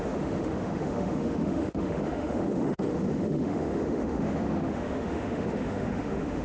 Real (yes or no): no